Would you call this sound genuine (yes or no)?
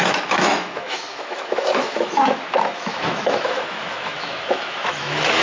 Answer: no